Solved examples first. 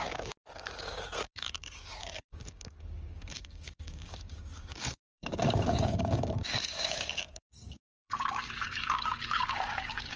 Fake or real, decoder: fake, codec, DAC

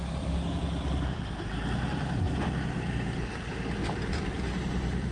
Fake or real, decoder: fake, vocoder, BigVGAN v2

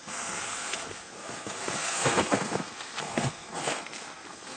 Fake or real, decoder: fake, codec, SNAC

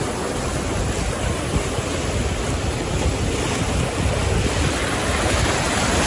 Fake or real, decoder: real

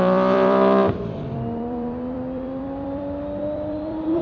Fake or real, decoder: fake, vocoder, BigVGAN v2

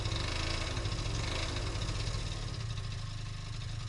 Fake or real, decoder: real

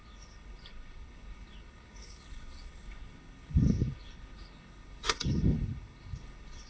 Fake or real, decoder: fake, codec, HILCodec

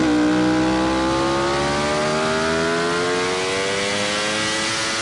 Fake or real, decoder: real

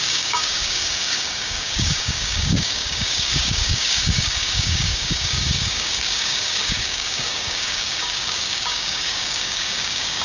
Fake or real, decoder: fake, codec, DAC